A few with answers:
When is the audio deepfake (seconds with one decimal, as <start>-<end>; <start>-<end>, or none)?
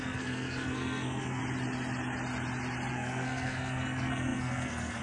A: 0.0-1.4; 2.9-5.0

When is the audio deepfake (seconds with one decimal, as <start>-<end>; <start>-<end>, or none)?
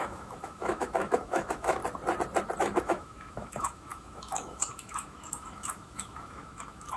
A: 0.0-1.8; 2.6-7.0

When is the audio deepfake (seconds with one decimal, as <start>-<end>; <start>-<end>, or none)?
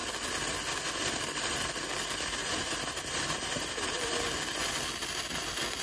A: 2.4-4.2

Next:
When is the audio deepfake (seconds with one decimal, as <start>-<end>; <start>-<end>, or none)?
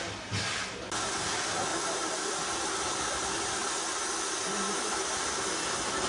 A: none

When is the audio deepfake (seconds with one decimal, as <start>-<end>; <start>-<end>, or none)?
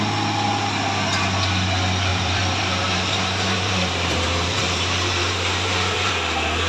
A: 2.1-6.1